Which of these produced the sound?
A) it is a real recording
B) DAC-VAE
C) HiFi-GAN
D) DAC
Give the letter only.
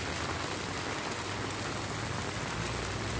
A